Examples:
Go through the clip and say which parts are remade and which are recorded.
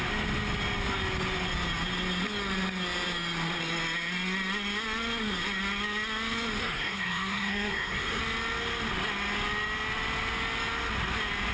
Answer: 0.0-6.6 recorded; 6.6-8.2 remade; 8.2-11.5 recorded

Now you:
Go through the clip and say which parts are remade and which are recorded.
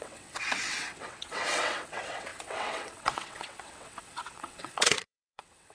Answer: 0.0-5.7 remade